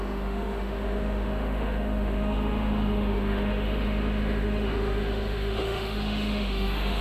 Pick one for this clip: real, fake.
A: fake